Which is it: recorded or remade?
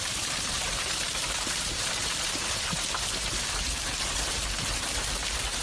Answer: remade